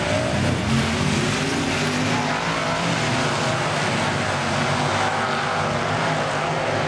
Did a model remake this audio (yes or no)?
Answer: no